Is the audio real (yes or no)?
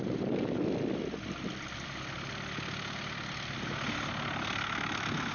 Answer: yes